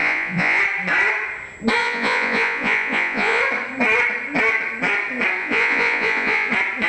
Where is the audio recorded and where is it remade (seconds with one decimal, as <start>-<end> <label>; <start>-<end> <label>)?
0.0-0.6 remade; 0.6-1.8 recorded; 1.8-3.4 remade; 3.4-5.4 recorded; 5.4-6.5 remade; 6.5-6.9 recorded

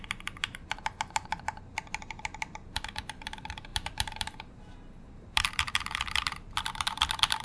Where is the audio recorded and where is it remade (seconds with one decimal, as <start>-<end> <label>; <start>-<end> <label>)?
0.0-7.4 remade

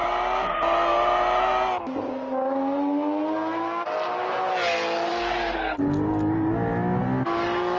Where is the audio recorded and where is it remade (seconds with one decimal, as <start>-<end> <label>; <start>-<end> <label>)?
0.0-5.1 recorded; 5.1-6.5 remade; 6.5-7.8 recorded

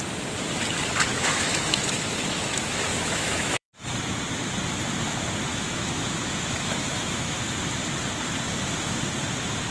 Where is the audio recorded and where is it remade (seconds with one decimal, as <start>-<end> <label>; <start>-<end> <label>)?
0.0-1.1 recorded; 1.1-3.9 remade; 3.9-5.5 recorded; 5.5-7.4 remade; 7.4-9.7 recorded

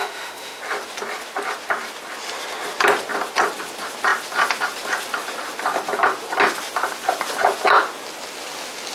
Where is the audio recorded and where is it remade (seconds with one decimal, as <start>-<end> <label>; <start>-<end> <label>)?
0.0-0.6 remade; 0.6-8.9 recorded